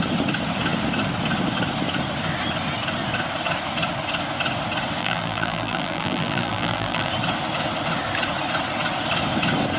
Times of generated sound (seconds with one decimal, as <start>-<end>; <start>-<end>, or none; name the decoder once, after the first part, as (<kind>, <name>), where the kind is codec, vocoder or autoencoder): 5.0-7.1 (vocoder, BigVGAN v2)